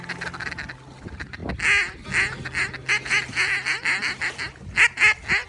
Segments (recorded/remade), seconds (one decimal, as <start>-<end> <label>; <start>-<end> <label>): 0.0-3.3 recorded; 3.3-4.2 remade; 4.2-5.5 recorded